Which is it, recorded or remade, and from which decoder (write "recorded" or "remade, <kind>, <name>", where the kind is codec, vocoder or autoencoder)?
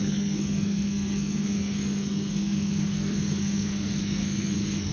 remade, codec, SNAC